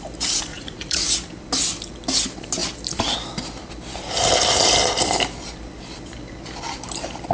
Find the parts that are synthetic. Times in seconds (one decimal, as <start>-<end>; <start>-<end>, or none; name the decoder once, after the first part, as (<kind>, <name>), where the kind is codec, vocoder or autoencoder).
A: 0.5-1.1 (vocoder, Vocos)